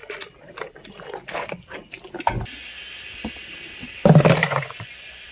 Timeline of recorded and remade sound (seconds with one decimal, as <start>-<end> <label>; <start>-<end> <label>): 0.0-4.4 recorded; 4.4-5.3 remade